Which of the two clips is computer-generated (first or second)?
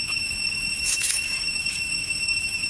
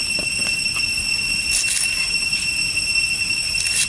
first